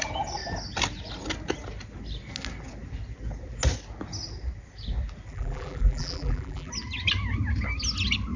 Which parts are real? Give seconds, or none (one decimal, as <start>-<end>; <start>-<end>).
0.0-5.3; 6.7-8.4